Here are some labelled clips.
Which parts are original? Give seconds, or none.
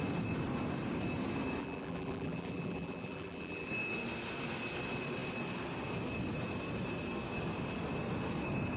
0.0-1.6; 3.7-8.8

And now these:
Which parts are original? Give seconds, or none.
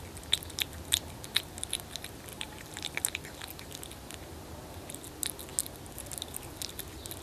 0.0-2.3; 3.0-7.2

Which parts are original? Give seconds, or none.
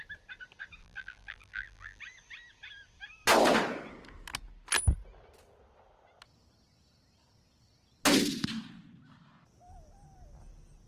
0.0-0.8; 2.0-10.9